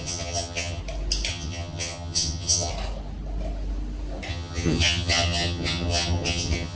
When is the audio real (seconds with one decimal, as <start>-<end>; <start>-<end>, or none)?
0.8-1.3; 2.7-4.3